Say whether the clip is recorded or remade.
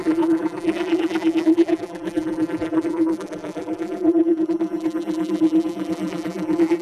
remade